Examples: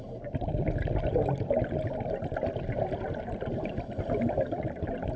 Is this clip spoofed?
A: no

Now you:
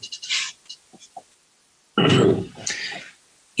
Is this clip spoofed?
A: no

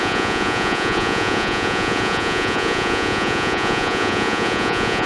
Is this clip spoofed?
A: yes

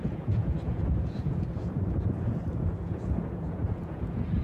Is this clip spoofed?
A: yes